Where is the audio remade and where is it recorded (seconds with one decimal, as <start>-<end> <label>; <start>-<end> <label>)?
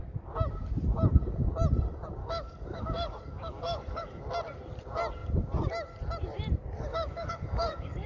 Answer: 0.0-2.2 recorded; 2.2-4.2 remade; 4.2-6.9 recorded; 6.9-8.1 remade